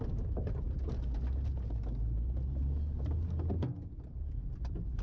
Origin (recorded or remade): recorded